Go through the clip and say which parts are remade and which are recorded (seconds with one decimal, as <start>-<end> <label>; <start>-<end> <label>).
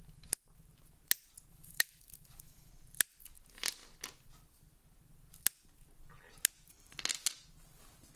0.0-1.5 recorded; 1.5-2.7 remade; 2.7-8.2 recorded